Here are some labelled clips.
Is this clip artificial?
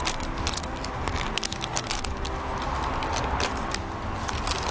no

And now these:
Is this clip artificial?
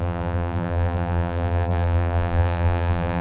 yes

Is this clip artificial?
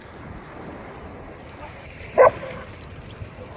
yes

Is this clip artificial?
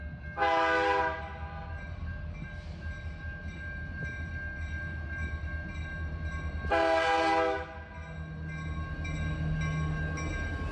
no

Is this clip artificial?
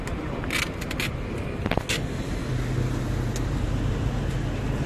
no